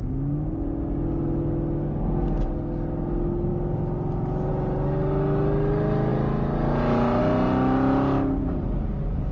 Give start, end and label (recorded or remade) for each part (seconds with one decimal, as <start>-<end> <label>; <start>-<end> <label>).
0.0-9.3 recorded